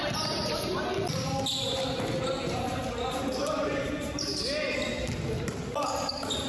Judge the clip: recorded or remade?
recorded